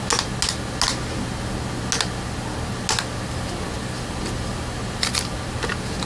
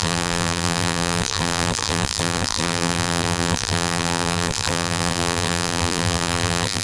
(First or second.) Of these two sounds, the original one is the first